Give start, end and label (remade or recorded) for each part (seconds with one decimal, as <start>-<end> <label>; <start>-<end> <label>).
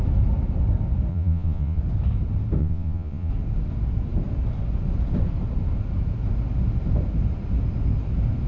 0.0-1.1 recorded; 1.1-1.8 remade; 1.8-2.6 recorded; 2.6-3.3 remade; 3.3-8.5 recorded